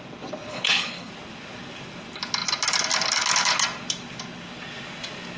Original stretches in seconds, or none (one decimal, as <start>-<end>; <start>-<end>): 0.0-0.5; 1.1-5.4